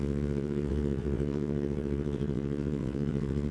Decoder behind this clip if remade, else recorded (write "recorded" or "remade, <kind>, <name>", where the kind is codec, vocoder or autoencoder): remade, vocoder, WaveNeXt